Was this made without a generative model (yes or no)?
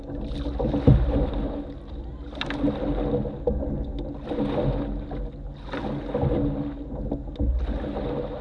yes